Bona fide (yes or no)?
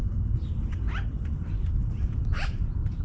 no